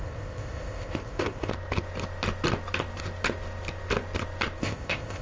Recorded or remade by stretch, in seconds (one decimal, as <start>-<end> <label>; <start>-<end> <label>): 0.0-1.5 remade; 1.5-4.6 recorded; 4.6-5.2 remade

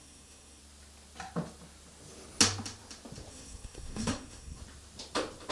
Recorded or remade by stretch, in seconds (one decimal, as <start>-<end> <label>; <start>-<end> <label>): 0.0-0.6 remade; 0.6-3.3 recorded; 3.3-4.6 remade; 4.6-5.5 recorded

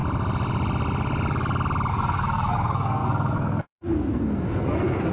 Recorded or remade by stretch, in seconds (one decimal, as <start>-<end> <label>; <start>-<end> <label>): 0.0-1.9 recorded; 1.9-5.1 remade